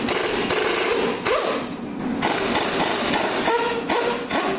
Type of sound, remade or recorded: recorded